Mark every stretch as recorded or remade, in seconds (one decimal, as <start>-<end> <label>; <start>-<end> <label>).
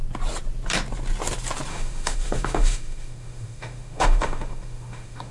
0.0-1.7 recorded; 1.7-5.3 remade